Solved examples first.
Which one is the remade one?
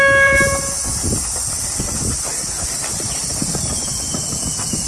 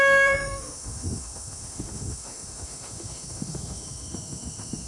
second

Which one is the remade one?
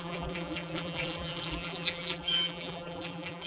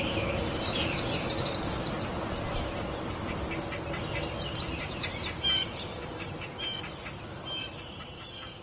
first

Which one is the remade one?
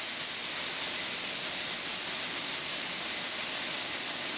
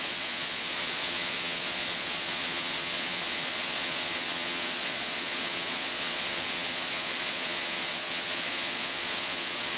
second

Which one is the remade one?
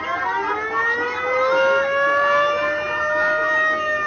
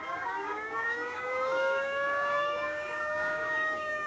second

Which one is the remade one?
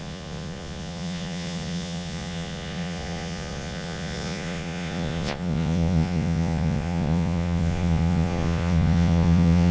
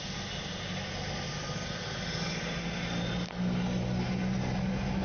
first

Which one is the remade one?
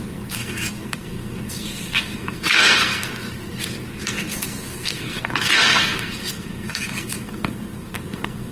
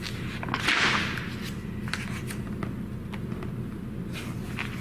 first